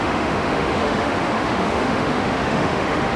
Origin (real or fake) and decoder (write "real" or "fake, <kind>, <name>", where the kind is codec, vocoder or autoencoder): fake, autoencoder, DAC-VAE